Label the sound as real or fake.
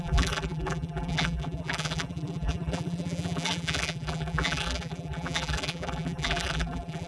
fake